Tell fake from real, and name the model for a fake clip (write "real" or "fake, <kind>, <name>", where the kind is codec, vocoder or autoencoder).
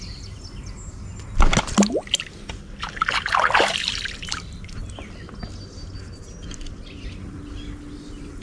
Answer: real